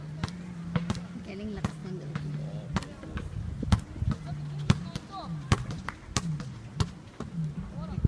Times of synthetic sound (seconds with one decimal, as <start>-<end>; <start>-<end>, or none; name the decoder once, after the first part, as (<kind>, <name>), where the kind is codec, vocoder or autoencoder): none